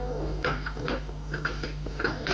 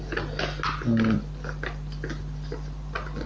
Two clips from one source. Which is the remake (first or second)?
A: first